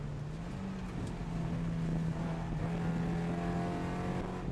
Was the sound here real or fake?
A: real